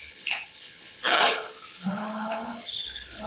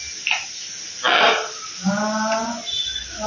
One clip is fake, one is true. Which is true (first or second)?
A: second